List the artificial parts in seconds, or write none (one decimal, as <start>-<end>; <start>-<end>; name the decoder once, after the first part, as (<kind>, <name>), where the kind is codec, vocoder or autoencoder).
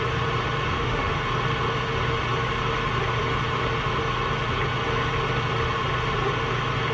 0.7-1.2 (autoencoder, DAC-VAE)